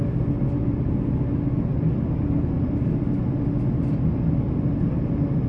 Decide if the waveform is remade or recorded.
recorded